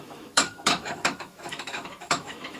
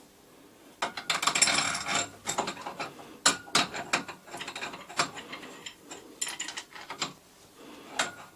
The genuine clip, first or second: second